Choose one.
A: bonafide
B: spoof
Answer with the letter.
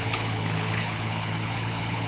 B